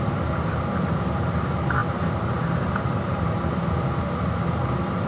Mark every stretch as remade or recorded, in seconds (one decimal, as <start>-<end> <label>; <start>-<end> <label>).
0.0-1.8 recorded; 1.8-2.7 remade; 2.7-5.1 recorded